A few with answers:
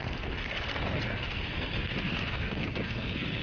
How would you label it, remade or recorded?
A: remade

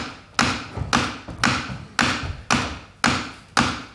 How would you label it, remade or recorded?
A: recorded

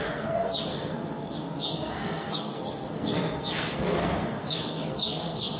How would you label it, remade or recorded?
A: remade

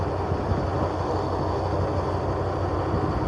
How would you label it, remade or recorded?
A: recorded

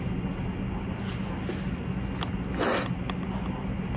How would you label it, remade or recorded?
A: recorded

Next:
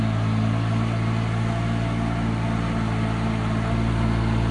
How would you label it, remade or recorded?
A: recorded